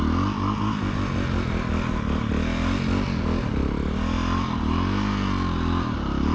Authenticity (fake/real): real